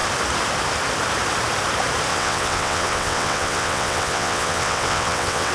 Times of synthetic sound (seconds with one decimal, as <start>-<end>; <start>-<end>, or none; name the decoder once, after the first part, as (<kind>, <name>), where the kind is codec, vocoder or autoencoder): 2.1-5.5 (vocoder, WaveNeXt)